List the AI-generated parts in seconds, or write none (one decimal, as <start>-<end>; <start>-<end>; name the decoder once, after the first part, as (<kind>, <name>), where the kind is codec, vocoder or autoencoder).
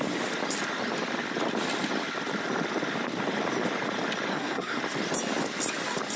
4.3-4.8 (codec, SNAC)